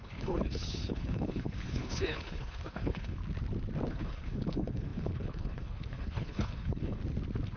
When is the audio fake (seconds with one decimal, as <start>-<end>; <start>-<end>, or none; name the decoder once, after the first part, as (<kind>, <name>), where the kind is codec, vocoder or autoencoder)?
0.0-3.2 (codec, HILCodec); 3.9-7.0